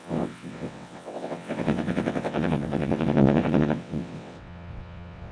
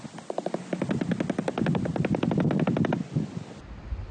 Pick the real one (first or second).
second